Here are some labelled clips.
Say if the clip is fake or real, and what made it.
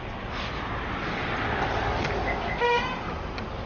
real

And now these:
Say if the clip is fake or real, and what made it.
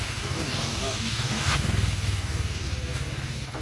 fake, codec, DAC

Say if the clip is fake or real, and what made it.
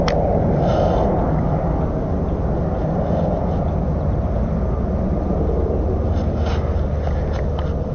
real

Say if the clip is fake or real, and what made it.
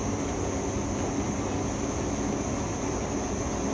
real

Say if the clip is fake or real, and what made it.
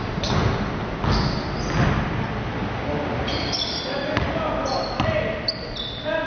real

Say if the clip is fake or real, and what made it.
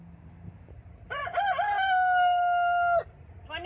real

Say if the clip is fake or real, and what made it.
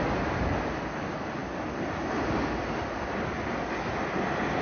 real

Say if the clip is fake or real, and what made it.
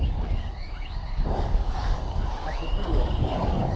fake, codec, DAC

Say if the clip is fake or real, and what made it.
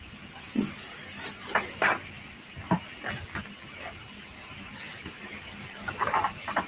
real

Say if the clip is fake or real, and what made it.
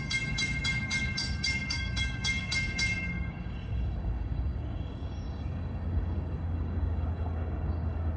fake, codec, DAC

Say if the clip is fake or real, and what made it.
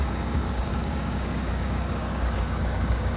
fake, codec, DAC